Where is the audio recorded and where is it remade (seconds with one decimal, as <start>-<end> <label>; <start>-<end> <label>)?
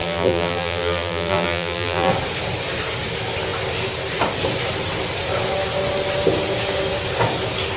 0.0-2.1 remade; 2.1-7.8 recorded